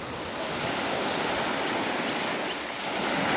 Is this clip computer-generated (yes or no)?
no